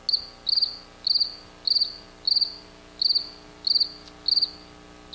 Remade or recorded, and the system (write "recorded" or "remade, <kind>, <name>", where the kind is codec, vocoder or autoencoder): recorded